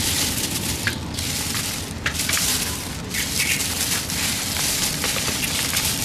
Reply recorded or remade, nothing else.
remade